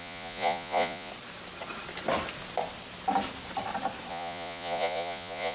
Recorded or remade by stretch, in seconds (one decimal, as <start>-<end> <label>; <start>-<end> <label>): 0.0-1.1 remade; 1.1-4.1 recorded; 4.1-5.5 remade